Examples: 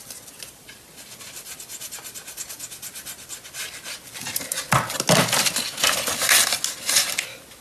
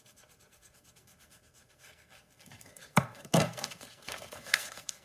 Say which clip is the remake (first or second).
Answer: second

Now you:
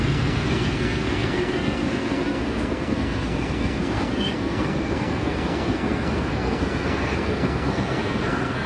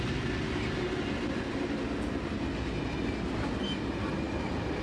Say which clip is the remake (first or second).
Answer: first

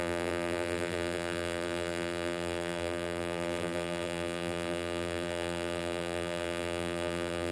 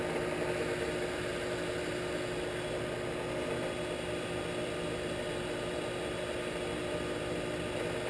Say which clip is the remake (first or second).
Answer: first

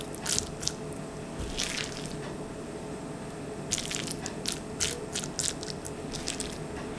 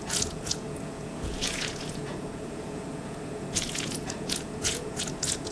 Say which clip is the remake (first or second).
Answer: second